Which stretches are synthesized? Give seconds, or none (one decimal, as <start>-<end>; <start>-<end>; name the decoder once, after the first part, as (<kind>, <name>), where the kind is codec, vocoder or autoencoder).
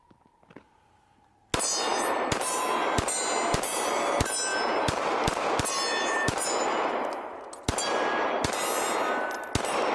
none